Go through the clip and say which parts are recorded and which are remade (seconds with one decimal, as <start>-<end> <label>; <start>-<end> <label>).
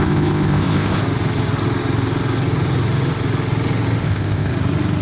0.0-1.0 remade; 1.0-4.0 recorded; 4.0-4.5 remade; 4.5-5.0 recorded